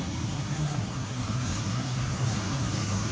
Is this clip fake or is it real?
fake